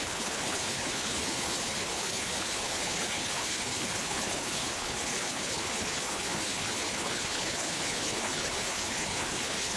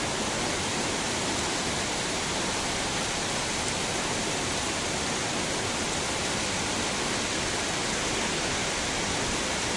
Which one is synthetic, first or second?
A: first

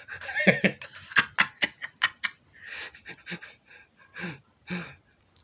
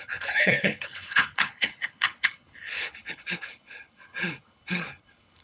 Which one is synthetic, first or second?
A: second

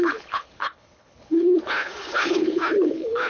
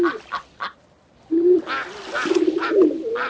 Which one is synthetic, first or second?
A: first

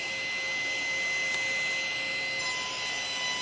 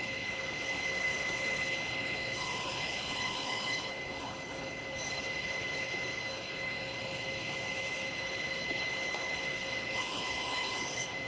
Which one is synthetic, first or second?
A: second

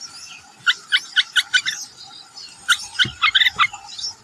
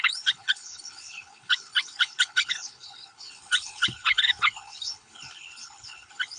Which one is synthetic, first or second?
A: second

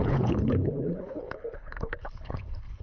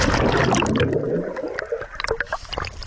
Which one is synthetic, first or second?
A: first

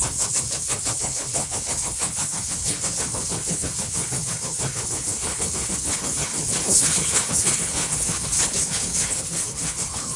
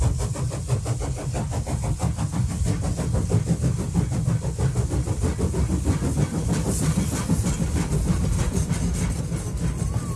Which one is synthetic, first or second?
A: first